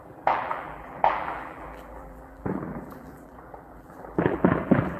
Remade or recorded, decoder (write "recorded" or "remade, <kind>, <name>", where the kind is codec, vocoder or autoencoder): remade, vocoder, BigVGAN v2